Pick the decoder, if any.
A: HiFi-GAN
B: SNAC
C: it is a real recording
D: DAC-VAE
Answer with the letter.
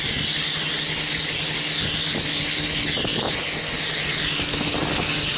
C